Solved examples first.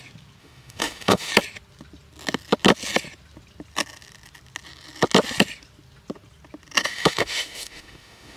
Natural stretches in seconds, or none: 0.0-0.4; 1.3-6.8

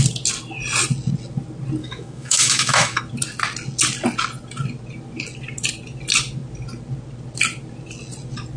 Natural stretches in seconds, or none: 0.0-1.8; 3.0-8.6

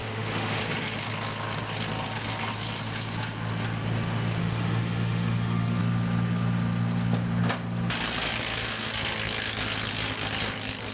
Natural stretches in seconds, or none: 0.6-4.4; 5.8-10.9

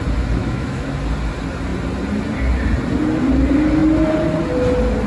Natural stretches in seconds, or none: 0.0-0.4; 0.9-5.1

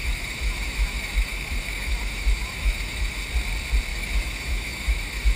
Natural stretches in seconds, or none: 3.2-3.9

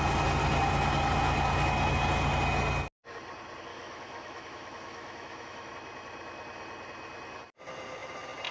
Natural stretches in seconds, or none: 0.0-3.7; 5.7-8.5